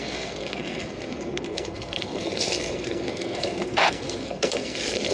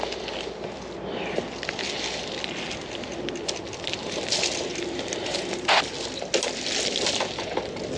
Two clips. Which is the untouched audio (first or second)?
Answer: second